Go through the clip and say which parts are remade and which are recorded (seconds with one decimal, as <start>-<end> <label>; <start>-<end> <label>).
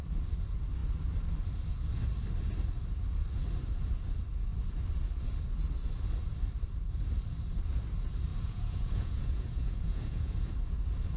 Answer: 0.0-8.3 recorded; 8.3-10.5 remade; 10.5-11.2 recorded